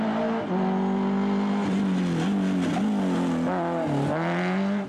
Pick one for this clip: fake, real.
real